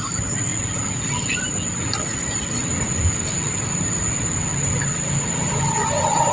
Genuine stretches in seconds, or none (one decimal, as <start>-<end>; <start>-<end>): 0.0-6.3